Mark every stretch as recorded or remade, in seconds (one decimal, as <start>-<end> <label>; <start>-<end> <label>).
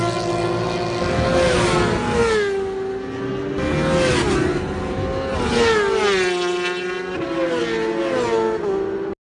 0.0-9.2 recorded